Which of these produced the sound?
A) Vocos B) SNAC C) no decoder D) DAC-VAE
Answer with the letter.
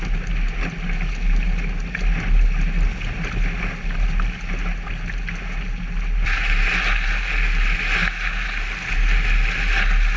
C